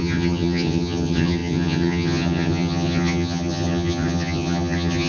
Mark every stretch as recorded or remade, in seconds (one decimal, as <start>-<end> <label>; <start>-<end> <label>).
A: 0.0-5.1 remade